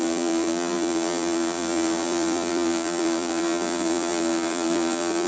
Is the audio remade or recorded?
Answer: remade